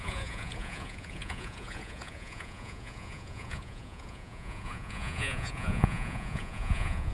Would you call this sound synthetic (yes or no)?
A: yes